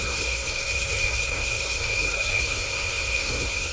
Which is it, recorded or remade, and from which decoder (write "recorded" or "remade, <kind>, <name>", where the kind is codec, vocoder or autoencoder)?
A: remade, codec, SNAC